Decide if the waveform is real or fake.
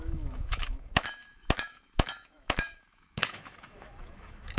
fake